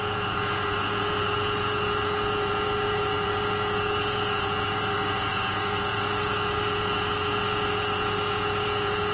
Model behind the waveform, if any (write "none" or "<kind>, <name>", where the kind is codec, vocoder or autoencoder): vocoder, Vocos